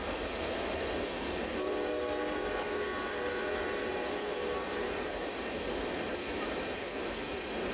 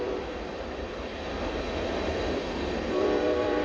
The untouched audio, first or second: first